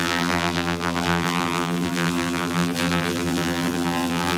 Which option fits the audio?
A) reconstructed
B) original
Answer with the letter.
A